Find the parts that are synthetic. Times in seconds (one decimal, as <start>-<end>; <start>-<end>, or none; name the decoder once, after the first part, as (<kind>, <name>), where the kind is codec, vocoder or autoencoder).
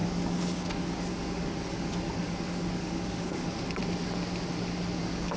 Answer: 0.0-3.8 (codec, DAC); 5.0-5.4